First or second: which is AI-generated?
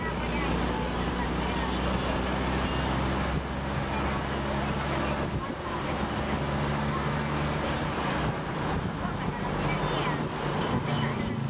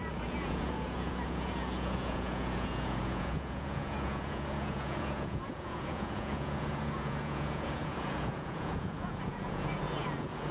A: second